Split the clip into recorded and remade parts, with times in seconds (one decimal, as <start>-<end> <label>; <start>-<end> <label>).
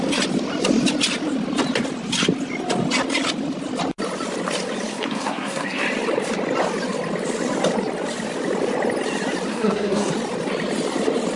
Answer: 0.0-4.9 recorded; 4.9-5.8 remade; 5.8-9.5 recorded; 9.5-10.1 remade; 10.1-11.4 recorded